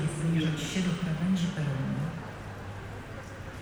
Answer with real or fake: real